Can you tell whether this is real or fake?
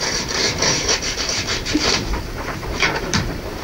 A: fake